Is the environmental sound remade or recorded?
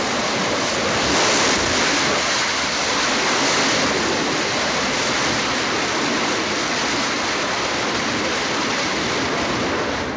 recorded